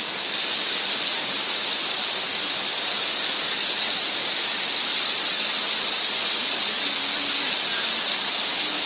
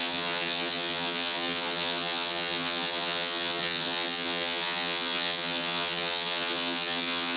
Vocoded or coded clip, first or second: second